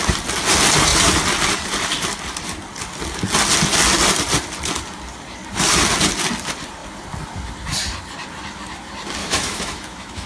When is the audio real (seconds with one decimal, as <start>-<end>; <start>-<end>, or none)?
0.0-9.2